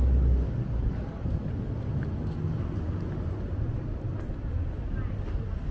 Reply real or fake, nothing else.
real